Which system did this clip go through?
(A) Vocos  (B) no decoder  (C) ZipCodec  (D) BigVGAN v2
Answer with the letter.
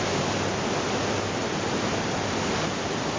B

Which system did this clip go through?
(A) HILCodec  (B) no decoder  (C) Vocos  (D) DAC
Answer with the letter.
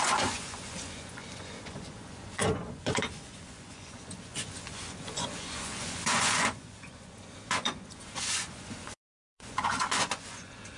C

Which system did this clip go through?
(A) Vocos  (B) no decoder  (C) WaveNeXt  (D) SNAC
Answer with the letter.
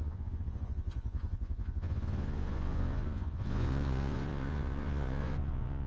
A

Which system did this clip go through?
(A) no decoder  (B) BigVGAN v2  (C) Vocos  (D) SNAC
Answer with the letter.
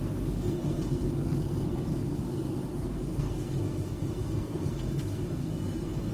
D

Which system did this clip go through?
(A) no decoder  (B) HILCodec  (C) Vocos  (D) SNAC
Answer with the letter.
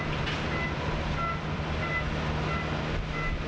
A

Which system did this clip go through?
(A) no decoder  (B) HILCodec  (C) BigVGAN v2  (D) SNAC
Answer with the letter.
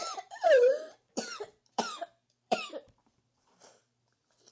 C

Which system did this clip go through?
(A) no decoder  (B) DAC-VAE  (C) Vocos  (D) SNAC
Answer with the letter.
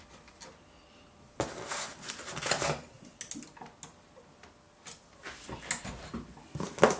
A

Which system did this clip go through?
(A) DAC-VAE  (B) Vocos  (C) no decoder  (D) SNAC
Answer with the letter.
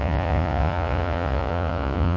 B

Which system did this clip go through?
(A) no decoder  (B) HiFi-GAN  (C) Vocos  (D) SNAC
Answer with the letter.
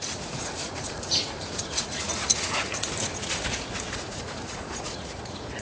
C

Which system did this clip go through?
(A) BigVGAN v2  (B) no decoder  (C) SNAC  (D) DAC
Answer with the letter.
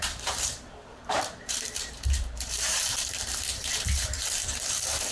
A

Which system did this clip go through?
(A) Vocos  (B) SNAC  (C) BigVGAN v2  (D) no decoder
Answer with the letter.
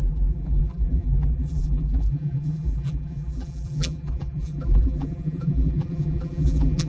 C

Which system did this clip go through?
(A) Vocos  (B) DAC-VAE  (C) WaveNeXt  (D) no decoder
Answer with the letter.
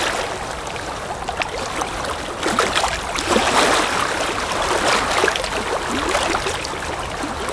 D